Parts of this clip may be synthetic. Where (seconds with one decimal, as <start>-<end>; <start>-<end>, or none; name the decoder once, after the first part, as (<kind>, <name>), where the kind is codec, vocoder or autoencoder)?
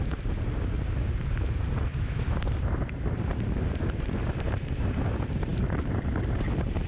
0.0-6.9 (vocoder, BigVGAN v2)